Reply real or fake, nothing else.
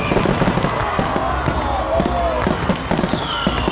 real